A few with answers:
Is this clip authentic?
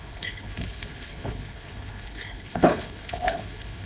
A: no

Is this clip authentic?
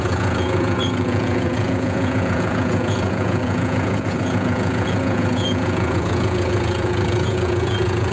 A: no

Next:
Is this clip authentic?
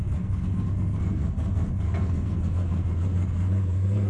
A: no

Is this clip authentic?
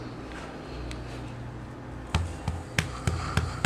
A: yes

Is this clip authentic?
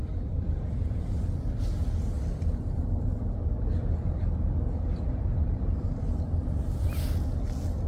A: yes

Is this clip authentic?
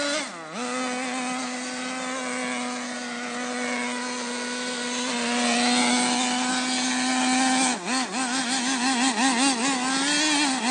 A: yes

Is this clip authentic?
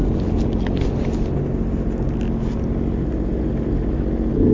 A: yes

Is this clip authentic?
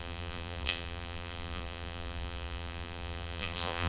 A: no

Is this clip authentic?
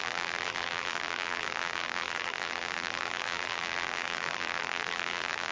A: no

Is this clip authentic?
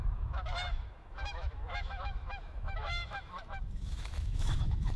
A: no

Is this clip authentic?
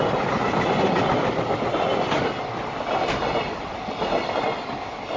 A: yes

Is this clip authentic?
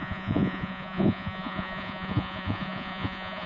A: no